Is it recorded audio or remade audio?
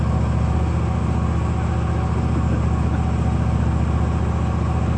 recorded